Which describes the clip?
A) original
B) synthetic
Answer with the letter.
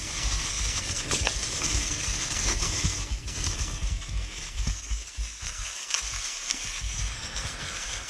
B